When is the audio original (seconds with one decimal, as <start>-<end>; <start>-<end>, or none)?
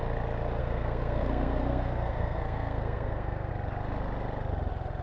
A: 0.0-0.6; 3.5-5.0